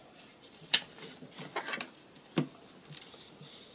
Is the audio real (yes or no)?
yes